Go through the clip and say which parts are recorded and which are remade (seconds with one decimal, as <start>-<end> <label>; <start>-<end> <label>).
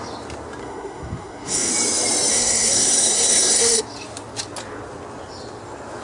0.0-0.6 recorded; 0.6-1.7 remade; 1.7-2.3 recorded; 2.3-3.8 remade; 3.8-6.0 recorded